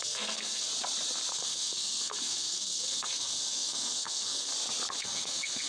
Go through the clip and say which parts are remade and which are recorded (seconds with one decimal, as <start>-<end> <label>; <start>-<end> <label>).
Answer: 0.0-0.7 remade; 0.7-1.3 recorded; 1.3-4.5 remade; 4.5-5.0 recorded; 5.0-5.7 remade